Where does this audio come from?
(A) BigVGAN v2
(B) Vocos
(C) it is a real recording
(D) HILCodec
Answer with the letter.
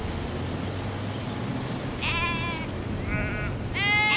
C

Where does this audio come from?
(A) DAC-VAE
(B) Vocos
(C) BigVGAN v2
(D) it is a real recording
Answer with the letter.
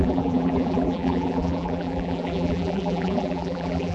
C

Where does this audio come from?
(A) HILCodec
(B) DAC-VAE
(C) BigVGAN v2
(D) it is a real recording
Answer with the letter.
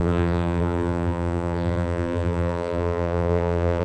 C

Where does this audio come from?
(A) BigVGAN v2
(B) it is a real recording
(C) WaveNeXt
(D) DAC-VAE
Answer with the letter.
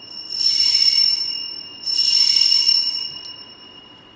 B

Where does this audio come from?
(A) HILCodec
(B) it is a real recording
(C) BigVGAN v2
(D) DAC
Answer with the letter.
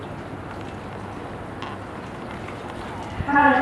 B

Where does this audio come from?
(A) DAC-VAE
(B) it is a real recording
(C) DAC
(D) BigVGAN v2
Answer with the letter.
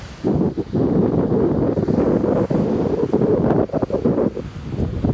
B